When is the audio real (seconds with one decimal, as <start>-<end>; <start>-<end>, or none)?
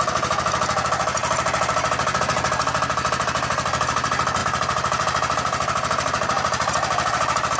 0.0-4.4